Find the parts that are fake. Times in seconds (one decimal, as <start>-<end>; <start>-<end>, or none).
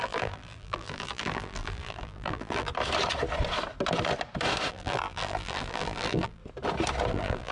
0.0-2.7; 4.7-6.4; 7.1-7.5